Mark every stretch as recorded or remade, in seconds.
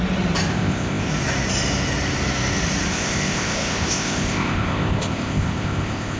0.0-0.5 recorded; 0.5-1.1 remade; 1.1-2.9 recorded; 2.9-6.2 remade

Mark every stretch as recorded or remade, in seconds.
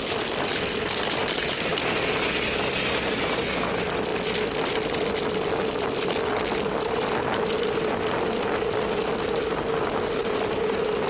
0.0-11.1 recorded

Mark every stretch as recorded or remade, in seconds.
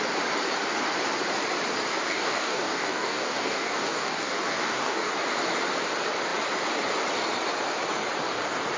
0.0-1.9 recorded; 1.9-5.1 remade; 5.1-8.8 recorded